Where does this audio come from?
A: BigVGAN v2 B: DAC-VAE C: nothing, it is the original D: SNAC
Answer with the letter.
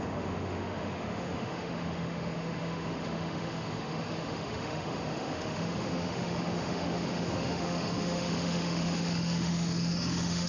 B